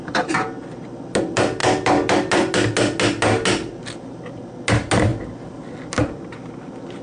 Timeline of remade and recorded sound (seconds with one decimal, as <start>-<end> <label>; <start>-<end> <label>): 0.0-7.0 recorded